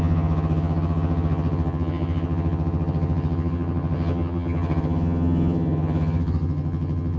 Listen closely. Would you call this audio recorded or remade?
remade